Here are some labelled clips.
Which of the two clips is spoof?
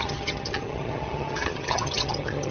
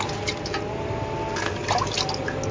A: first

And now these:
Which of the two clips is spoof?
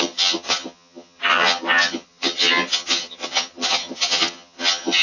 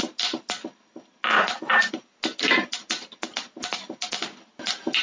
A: first